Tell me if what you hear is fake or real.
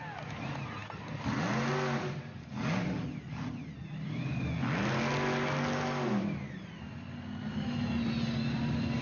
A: real